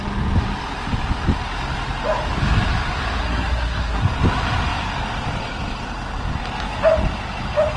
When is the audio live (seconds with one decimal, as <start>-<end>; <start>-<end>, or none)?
0.0-3.2; 4.0-7.8